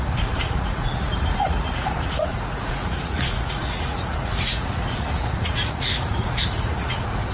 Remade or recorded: remade